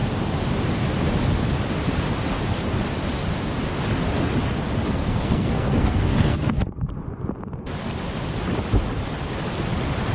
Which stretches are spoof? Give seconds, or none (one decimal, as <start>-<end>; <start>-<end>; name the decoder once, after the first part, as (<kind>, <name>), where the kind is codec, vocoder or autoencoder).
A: 4.9-6.5 (codec, SNAC)